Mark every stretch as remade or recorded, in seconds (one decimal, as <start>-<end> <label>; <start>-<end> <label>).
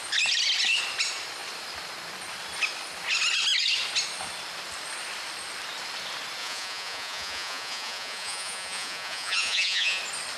0.0-6.4 recorded; 6.4-10.0 remade; 10.0-10.4 recorded